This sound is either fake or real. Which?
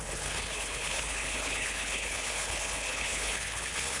fake